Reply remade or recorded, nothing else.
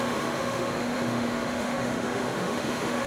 remade